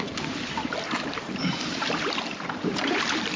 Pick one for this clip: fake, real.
fake